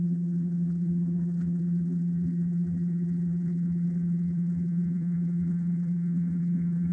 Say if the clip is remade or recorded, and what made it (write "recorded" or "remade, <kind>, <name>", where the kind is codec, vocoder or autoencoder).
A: remade, vocoder, BigVGAN v2